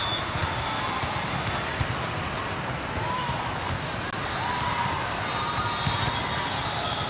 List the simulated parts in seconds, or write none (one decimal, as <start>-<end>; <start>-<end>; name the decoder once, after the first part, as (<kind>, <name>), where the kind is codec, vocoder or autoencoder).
none

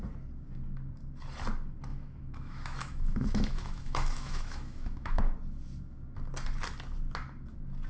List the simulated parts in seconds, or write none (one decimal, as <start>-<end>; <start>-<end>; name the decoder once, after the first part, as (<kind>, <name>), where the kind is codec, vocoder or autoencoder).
1.9-5.2 (autoencoder, DAC-VAE)

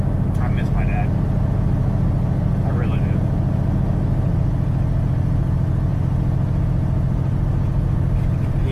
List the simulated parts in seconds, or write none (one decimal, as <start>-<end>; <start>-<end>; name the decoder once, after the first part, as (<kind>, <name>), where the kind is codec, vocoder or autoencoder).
none

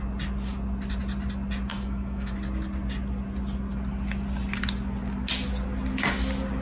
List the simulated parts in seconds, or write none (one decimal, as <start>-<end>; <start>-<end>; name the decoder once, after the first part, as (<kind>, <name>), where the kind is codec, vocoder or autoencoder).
1.7-2.3 (autoencoder, DAC-VAE)

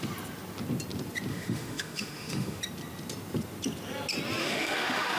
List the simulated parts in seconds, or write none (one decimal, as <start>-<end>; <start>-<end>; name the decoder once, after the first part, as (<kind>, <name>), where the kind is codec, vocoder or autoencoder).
1.3-2.6 (autoencoder, DAC-VAE); 4.4-5.2

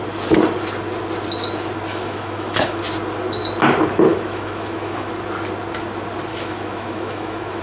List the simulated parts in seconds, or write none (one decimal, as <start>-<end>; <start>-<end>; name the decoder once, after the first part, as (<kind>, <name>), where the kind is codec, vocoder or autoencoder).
1.9-2.8 (autoencoder, DAC-VAE); 4.1-5.1; 6.3-7.6

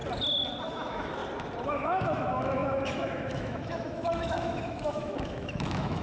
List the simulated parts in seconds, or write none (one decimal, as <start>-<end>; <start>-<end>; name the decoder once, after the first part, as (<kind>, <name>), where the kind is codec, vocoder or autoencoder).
0.6-1.2 (autoencoder, DAC-VAE); 1.7-6.0

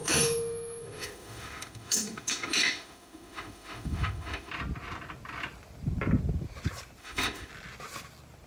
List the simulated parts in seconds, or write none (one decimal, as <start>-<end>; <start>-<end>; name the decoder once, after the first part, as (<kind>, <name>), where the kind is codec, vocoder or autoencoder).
0.0-4.5 (autoencoder, DAC-VAE); 7.0-7.5